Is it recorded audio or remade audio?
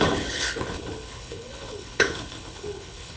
remade